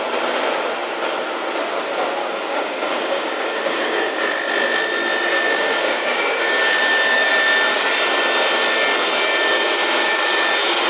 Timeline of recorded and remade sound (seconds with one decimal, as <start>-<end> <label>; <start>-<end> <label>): 0.0-2.2 recorded; 2.2-4.2 remade; 4.2-5.3 recorded; 5.3-7.3 remade; 7.3-10.9 recorded